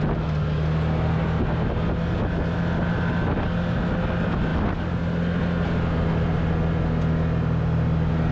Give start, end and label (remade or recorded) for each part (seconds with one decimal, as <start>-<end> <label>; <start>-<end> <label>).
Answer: 0.0-8.3 recorded